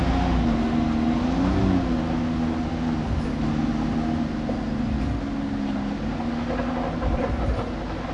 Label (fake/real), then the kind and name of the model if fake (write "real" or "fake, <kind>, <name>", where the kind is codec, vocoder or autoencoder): real